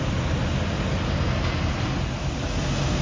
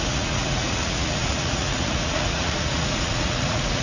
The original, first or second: first